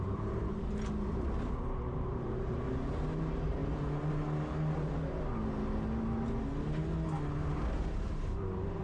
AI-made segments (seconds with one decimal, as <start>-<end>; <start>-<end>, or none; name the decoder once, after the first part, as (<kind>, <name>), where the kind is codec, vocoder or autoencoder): 0.0-3.6 (vocoder, BigVGAN v2); 7.7-8.8